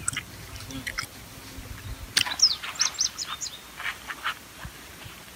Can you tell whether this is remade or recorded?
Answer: recorded